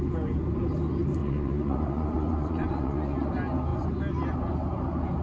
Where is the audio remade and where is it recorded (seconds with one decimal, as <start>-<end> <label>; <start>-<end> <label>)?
0.0-1.2 recorded; 1.2-3.3 remade; 3.3-5.2 recorded